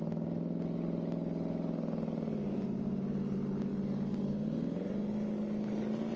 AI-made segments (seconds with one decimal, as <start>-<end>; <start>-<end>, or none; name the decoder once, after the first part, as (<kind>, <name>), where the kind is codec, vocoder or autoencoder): none